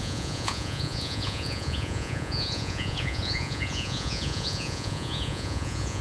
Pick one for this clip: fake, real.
fake